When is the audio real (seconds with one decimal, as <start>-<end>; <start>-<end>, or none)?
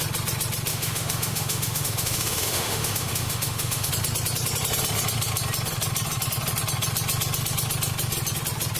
0.0-0.7; 3.9-8.8